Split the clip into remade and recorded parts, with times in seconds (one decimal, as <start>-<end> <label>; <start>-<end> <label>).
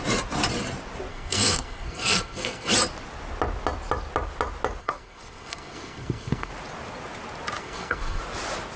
0.0-1.1 recorded; 1.1-2.7 remade; 2.7-4.8 recorded; 4.8-6.5 remade; 6.5-7.6 recorded; 7.6-8.2 remade; 8.2-8.8 recorded